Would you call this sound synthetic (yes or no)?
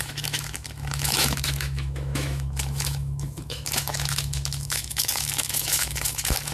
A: yes